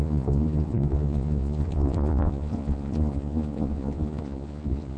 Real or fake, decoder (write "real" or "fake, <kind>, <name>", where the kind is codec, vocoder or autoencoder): fake, vocoder, Vocos